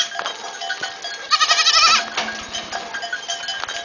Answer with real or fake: real